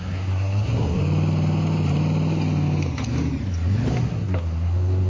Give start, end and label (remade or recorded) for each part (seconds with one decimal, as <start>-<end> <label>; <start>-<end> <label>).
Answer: 0.0-1.0 remade; 1.0-3.9 recorded; 3.9-5.1 remade